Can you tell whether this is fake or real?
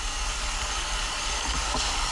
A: fake